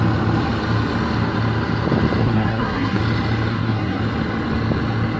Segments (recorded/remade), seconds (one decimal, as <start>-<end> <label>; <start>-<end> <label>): 0.0-2.2 recorded; 2.2-3.0 remade; 3.0-3.5 recorded; 3.5-4.0 remade; 4.0-5.2 recorded